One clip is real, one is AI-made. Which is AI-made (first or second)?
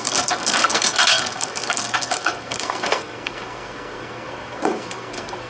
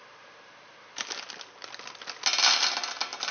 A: first